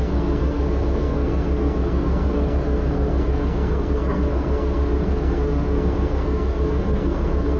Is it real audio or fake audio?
fake